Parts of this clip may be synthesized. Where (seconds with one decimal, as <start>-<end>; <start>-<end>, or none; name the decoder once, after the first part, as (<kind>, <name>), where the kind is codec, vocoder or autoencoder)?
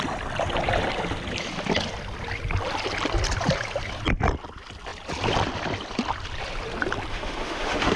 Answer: 7.1-8.0 (autoencoder, DAC-VAE)